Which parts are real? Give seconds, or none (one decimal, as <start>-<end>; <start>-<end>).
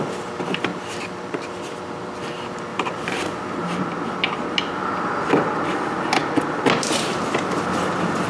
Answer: 0.0-0.7; 2.1-2.7; 3.8-8.3